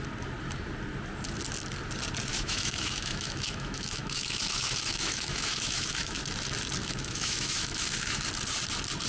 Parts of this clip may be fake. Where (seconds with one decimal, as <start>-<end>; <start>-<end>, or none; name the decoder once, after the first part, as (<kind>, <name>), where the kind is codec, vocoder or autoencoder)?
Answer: 2.3-6.2 (autoencoder, DAC-VAE); 6.8-8.2